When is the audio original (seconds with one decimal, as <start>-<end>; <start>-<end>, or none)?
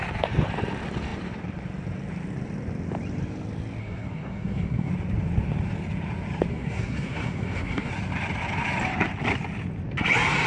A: 0.0-3.8; 4.9-6.5; 7.9-10.5